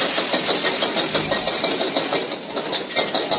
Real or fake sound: real